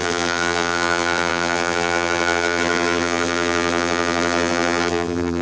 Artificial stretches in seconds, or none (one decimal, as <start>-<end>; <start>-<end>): 0.0-5.4